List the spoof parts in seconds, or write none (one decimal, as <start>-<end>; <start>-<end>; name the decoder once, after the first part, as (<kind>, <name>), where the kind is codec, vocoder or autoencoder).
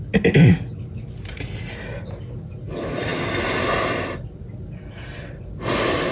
none